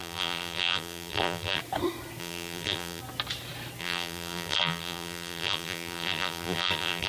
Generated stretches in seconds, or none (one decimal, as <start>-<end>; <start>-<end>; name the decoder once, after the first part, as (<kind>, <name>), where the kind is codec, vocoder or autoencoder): 0.0-1.6 (vocoder, BigVGAN v2); 2.2-3.0; 3.8-7.1